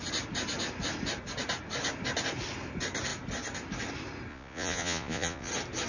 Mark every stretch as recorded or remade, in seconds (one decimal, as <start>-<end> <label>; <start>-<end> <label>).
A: 0.0-4.3 recorded; 4.3-5.5 remade; 5.5-5.9 recorded